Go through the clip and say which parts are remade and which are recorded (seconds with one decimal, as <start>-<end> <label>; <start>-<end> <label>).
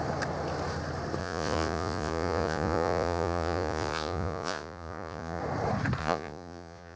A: 0.0-1.2 recorded; 1.2-5.4 remade; 5.4-6.0 recorded; 6.0-7.0 remade